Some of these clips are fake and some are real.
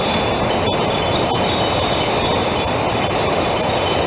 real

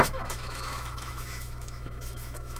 fake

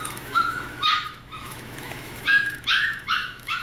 fake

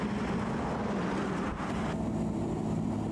real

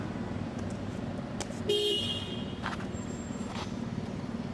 real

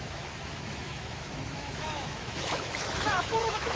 fake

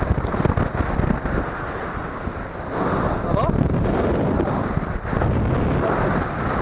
real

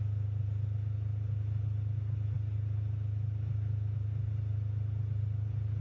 real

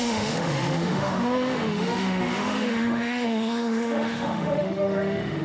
fake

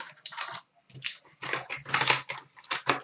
real